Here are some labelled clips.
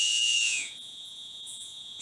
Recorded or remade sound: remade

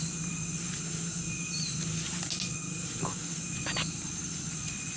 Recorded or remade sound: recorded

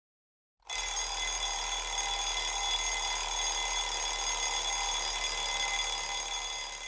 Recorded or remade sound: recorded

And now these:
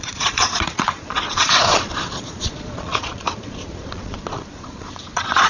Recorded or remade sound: remade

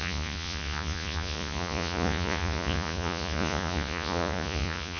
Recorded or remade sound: remade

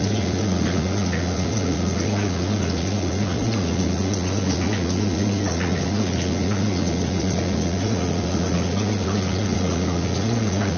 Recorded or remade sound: remade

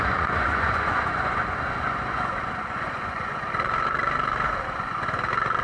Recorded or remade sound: remade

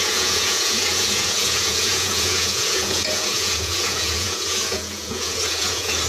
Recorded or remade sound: remade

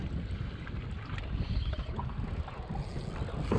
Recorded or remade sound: recorded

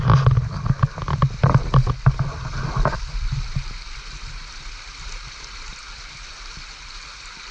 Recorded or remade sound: recorded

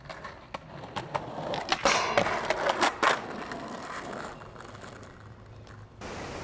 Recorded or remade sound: recorded